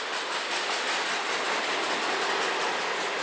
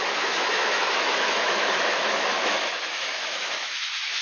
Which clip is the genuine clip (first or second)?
first